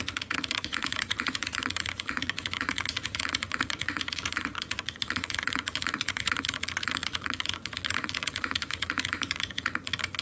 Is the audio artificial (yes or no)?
yes